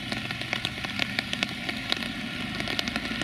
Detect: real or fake real